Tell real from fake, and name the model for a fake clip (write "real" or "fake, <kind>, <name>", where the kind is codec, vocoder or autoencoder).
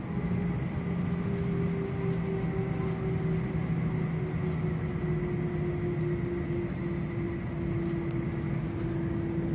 real